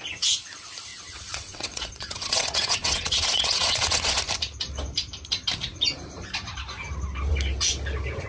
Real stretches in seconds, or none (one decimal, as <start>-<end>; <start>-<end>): 0.0-0.9; 4.2-8.3